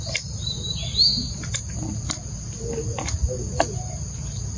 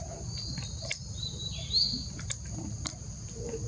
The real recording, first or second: first